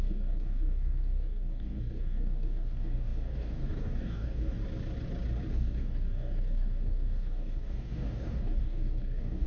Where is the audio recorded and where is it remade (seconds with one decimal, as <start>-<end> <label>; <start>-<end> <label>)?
0.0-4.6 remade; 4.6-5.5 recorded; 5.5-9.5 remade